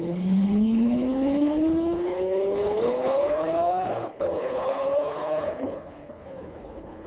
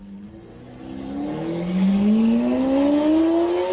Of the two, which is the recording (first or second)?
second